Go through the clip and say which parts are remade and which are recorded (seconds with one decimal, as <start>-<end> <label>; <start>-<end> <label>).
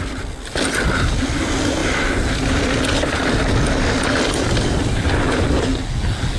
0.0-6.4 recorded